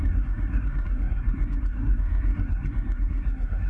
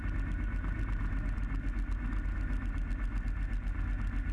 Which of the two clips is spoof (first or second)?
first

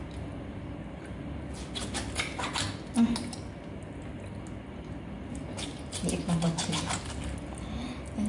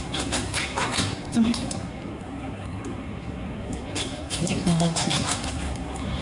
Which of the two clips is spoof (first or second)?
second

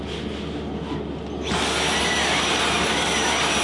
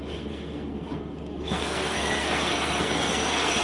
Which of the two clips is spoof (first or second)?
second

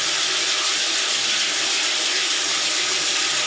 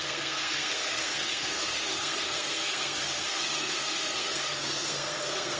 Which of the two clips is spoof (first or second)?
second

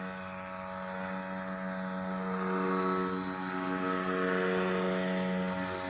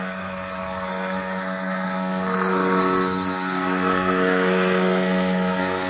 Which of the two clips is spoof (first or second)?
second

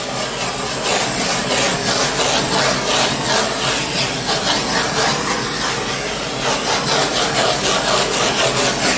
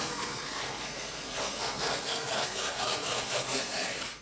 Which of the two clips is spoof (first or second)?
second